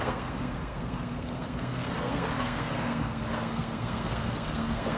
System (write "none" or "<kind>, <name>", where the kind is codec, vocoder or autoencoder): codec, SNAC